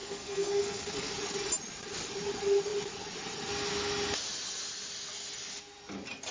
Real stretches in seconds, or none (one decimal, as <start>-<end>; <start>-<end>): 1.1-6.3